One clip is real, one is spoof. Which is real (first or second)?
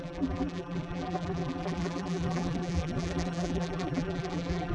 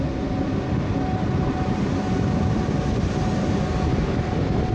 second